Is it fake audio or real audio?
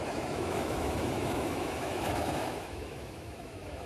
fake